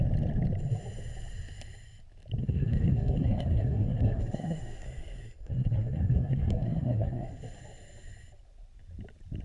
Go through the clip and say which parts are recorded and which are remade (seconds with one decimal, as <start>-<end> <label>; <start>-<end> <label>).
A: 0.0-2.4 recorded; 2.4-7.3 remade; 7.3-9.4 recorded